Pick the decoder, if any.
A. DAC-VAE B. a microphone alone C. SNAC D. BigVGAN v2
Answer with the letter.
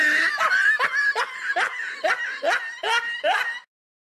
B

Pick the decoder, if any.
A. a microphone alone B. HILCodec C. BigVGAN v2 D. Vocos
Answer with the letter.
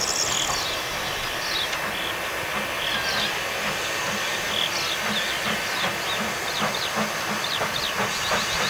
A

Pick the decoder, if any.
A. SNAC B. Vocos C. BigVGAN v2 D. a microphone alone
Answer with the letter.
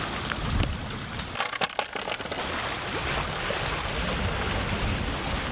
D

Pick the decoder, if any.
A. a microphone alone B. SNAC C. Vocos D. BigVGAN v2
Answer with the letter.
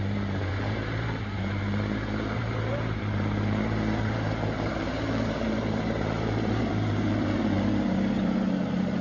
D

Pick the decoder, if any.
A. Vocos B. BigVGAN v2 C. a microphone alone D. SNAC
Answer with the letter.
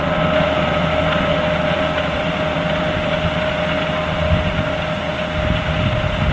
C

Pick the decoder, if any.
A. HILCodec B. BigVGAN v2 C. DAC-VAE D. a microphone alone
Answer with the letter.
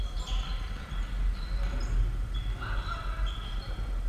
D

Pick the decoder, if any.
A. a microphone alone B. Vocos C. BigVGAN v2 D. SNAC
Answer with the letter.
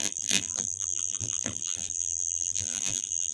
C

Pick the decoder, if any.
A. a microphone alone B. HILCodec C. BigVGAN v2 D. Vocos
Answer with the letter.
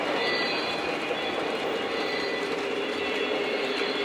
A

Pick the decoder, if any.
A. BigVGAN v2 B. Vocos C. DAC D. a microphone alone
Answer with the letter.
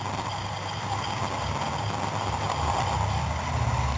D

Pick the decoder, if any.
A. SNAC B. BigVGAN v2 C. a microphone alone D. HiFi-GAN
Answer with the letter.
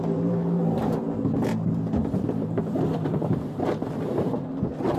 B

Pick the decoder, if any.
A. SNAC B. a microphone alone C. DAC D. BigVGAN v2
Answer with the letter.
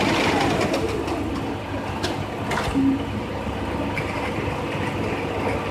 B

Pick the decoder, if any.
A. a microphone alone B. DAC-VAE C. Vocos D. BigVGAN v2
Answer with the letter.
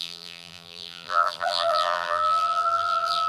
D